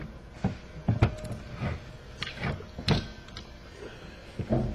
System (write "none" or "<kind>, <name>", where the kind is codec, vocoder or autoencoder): none